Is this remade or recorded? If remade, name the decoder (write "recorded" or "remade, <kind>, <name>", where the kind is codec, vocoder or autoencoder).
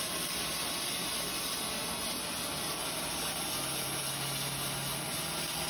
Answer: recorded